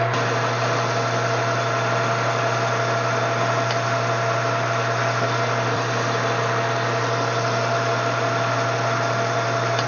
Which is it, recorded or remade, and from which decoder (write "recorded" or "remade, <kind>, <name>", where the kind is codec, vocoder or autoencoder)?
recorded